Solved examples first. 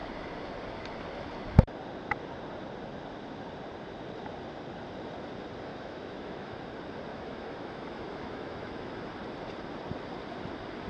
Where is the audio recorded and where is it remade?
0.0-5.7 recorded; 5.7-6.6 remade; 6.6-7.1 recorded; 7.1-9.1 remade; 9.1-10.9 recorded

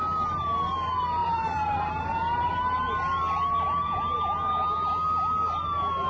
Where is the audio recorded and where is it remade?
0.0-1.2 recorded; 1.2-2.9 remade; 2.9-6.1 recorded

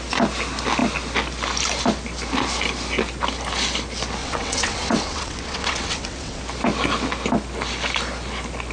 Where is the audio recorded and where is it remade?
0.0-4.2 recorded; 4.2-6.4 remade; 6.4-8.7 recorded

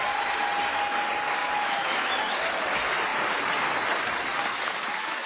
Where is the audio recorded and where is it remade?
0.0-1.4 recorded; 1.4-2.1 remade; 2.1-4.5 recorded; 4.5-5.3 remade

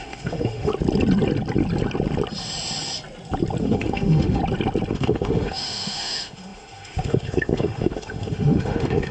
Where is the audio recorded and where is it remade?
0.0-0.7 remade; 0.7-3.6 recorded; 3.6-4.4 remade; 4.4-4.9 recorded; 4.9-9.1 remade

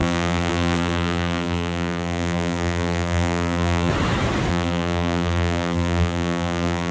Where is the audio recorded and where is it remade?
0.0-3.9 remade; 3.9-4.5 recorded; 4.5-6.9 remade

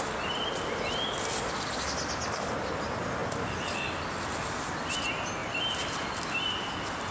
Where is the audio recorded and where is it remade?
0.0-7.1 recorded